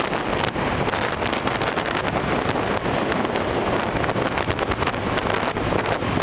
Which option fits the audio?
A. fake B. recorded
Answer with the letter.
B